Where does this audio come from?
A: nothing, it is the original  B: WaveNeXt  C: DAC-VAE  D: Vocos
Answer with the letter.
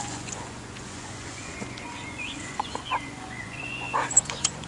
D